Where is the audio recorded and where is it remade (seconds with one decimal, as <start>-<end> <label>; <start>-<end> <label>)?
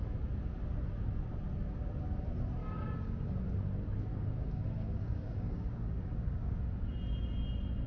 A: 0.0-2.6 recorded; 2.6-3.4 remade; 3.4-4.1 recorded; 4.1-6.6 remade; 6.6-7.9 recorded